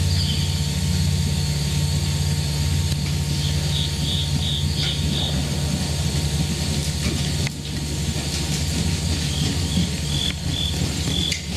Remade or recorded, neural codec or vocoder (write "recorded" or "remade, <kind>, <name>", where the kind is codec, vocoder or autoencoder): recorded